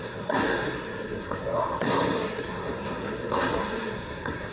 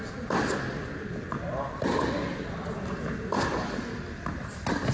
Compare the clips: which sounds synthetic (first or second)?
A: first